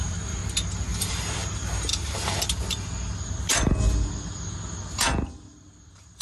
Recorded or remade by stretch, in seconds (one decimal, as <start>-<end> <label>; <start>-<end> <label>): 0.0-0.4 remade; 0.4-1.1 recorded; 1.1-1.9 remade; 1.9-5.3 recorded; 5.3-6.2 remade